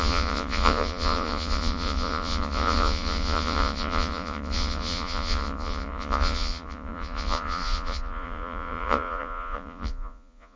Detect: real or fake fake